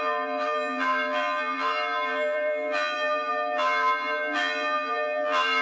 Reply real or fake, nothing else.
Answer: fake